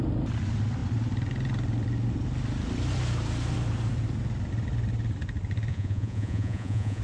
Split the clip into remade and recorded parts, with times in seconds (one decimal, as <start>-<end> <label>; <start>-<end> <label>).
0.0-5.7 recorded; 5.7-7.0 remade